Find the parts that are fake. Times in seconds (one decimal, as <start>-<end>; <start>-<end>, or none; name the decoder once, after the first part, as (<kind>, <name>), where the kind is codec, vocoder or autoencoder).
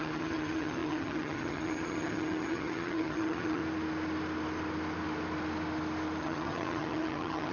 0.0-3.6 (vocoder, HiFi-GAN); 6.2-7.5